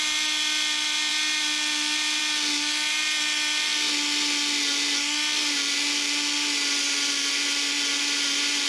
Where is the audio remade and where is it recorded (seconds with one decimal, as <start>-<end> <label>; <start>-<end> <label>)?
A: 0.0-8.7 recorded